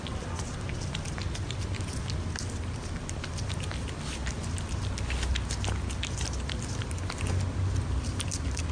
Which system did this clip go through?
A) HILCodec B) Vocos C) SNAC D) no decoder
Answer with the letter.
D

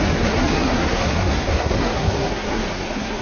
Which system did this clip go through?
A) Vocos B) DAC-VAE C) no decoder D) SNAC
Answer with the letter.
D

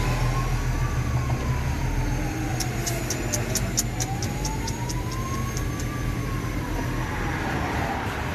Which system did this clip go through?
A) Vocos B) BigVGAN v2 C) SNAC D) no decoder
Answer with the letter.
D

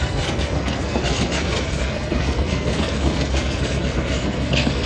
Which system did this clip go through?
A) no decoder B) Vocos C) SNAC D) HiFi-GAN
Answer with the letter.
C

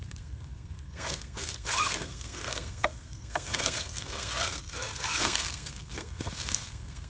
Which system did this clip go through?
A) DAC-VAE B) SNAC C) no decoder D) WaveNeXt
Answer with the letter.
B